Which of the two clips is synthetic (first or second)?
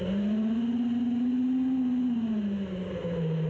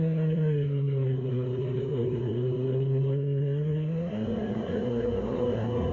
second